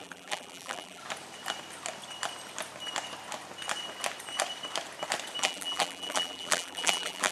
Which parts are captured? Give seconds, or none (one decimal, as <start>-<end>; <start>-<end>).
1.0-5.4